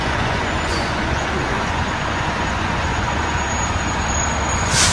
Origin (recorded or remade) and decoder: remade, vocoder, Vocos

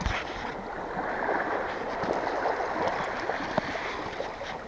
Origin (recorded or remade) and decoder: recorded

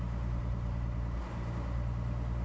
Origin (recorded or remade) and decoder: recorded